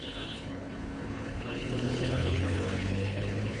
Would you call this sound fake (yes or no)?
yes